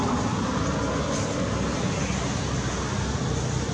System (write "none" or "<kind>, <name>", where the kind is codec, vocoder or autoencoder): none